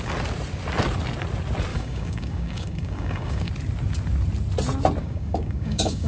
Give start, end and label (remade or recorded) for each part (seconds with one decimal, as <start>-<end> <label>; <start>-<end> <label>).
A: 0.0-1.7 recorded; 1.7-3.5 remade; 3.5-5.0 recorded; 5.0-6.1 remade